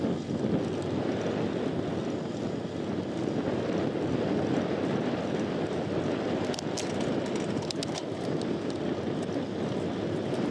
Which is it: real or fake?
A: real